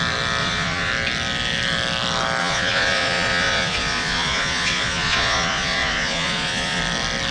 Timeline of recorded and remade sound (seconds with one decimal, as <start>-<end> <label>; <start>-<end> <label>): 0.0-0.4 recorded; 0.4-0.9 remade; 0.9-2.4 recorded; 2.4-6.8 remade; 6.8-7.3 recorded

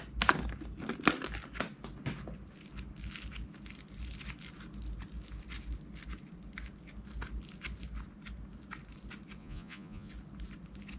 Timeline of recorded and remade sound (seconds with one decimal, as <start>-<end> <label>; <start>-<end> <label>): 0.0-9.4 recorded; 9.4-10.1 remade; 10.1-11.0 recorded

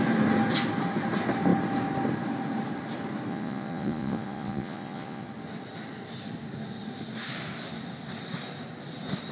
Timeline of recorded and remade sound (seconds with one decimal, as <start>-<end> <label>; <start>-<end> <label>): 0.0-3.3 recorded; 3.3-5.3 remade; 5.3-9.3 recorded

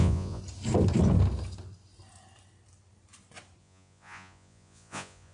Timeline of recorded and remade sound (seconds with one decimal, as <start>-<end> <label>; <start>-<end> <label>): 0.0-0.4 remade; 0.4-3.6 recorded; 3.6-5.3 remade

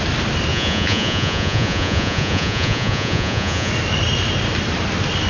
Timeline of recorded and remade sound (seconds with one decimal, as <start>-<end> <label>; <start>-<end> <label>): 0.0-0.5 recorded; 0.5-3.7 remade; 3.7-5.3 recorded

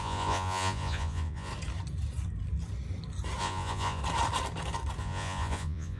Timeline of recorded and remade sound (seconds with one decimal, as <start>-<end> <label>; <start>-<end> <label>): 0.0-1.5 remade; 1.5-3.4 recorded; 3.4-4.0 remade; 4.0-5.0 recorded; 5.0-6.0 remade

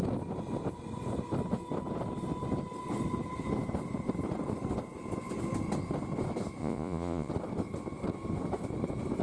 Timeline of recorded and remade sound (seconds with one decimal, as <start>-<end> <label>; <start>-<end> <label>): 0.0-6.6 recorded; 6.6-7.3 remade; 7.3-9.2 recorded

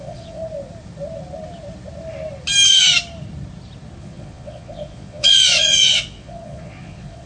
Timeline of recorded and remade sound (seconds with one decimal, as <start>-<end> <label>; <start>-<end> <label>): 0.0-0.4 remade; 0.4-4.0 recorded; 4.0-7.3 remade